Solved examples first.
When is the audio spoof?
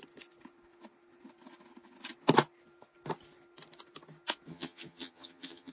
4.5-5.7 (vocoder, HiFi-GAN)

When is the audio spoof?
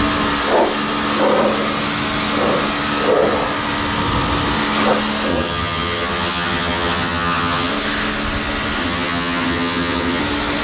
5.3-7.7 (vocoder, HiFi-GAN); 8.8-10.2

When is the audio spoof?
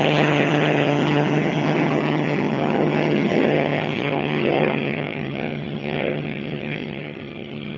0.0-7.8 (vocoder, HiFi-GAN)